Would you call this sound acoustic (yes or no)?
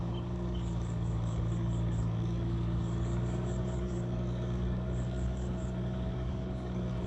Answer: no